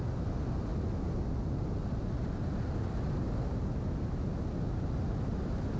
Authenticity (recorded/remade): recorded